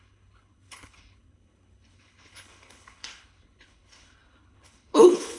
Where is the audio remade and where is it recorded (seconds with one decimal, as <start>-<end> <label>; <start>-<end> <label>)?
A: 0.0-5.4 remade